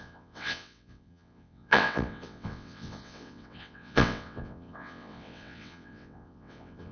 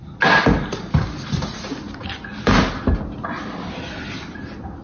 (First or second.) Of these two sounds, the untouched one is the second